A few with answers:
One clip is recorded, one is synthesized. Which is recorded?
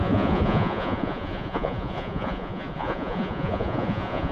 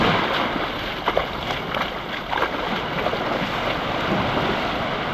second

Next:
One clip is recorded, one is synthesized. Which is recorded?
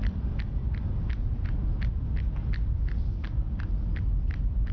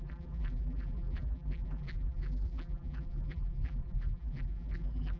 first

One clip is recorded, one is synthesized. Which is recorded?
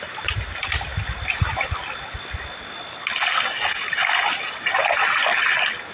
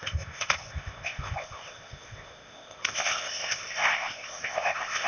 first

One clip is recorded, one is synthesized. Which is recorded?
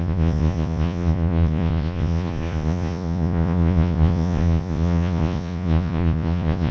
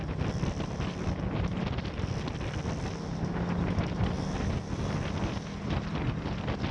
second